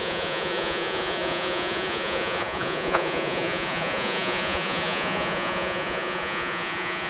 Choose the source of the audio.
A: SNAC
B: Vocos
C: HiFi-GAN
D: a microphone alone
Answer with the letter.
B